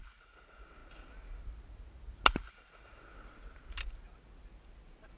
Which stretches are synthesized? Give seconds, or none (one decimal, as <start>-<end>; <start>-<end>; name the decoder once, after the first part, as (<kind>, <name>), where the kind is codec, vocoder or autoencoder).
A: none